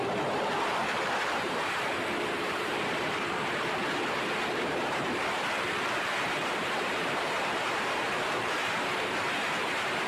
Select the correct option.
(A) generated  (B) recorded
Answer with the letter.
A